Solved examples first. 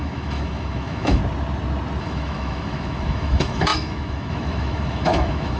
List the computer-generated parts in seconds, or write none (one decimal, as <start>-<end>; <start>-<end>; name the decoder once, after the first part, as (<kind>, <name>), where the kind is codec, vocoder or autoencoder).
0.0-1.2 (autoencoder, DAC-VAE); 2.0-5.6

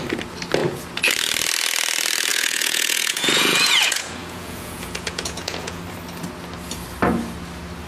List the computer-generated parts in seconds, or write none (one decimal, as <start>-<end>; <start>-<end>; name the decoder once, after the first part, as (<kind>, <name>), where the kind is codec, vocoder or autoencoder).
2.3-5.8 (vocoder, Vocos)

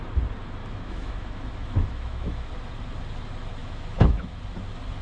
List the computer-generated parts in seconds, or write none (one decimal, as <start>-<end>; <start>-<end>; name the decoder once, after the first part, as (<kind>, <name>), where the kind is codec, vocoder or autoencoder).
0.6-2.5 (autoencoder, DAC-VAE); 3.6-4.4

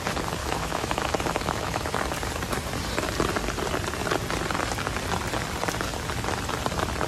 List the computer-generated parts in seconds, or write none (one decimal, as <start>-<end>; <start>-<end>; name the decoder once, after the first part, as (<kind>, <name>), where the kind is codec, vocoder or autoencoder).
0.4-2.0 (autoencoder, DAC-VAE)